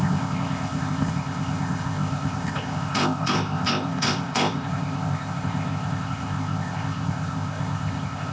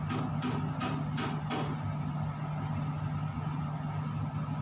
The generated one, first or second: first